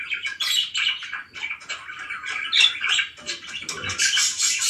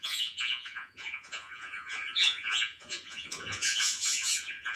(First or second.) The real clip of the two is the first